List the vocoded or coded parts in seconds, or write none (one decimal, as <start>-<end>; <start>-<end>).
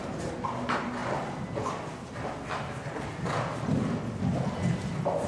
none